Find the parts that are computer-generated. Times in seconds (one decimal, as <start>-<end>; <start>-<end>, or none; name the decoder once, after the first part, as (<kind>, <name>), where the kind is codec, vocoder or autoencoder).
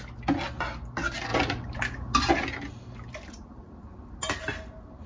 none